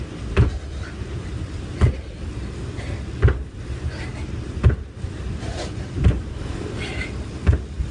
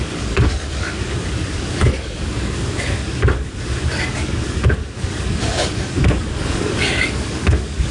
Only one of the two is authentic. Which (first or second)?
first